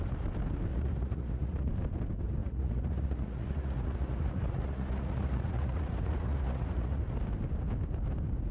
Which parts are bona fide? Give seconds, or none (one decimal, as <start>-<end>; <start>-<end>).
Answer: 0.0-0.7; 1.7-2.4; 7.0-8.5